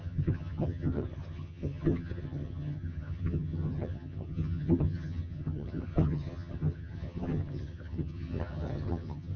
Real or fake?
fake